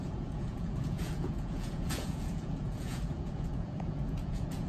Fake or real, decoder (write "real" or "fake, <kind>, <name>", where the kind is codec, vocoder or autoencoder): fake, vocoder, Vocos